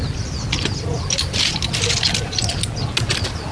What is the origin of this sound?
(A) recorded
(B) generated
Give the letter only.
A